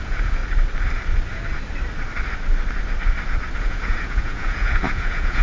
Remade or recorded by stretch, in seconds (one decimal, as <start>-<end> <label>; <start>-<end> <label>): 0.0-0.4 remade; 0.4-3.6 recorded; 3.6-5.4 remade